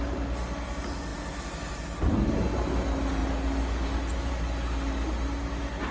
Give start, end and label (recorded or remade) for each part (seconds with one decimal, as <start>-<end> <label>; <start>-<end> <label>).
0.0-5.9 recorded